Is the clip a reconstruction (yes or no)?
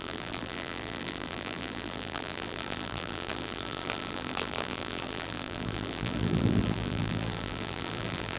yes